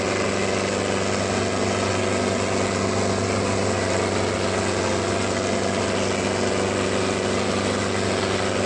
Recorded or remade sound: recorded